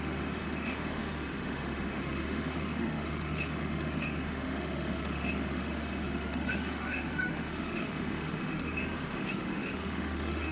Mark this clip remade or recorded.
remade